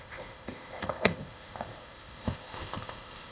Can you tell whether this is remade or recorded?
remade